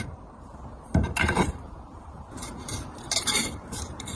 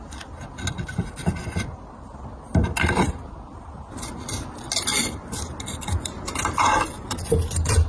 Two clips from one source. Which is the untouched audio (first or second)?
second